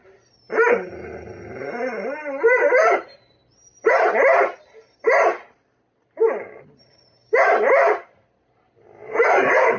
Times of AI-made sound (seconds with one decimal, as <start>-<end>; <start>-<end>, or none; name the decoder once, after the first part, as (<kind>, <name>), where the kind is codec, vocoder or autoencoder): none